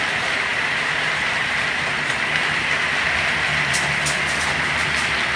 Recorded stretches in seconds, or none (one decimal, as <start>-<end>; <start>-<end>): 0.0-5.4